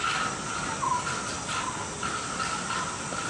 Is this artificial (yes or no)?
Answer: no